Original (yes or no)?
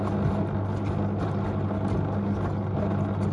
yes